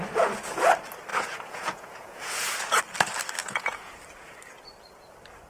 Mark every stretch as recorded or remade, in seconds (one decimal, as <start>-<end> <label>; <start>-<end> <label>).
0.0-1.1 recorded; 1.1-2.8 remade; 2.8-3.4 recorded; 3.4-4.0 remade; 4.0-5.5 recorded